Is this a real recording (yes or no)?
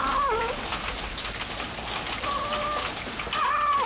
yes